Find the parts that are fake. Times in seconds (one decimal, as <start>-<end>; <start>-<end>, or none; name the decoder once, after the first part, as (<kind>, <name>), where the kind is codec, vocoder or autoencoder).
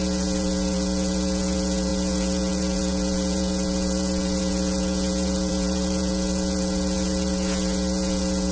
0.0-8.5 (vocoder, Vocos)